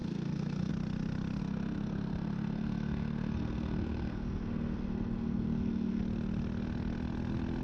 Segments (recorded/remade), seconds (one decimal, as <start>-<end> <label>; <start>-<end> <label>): 0.0-0.7 remade; 0.7-1.4 recorded; 1.4-6.0 remade; 6.0-7.6 recorded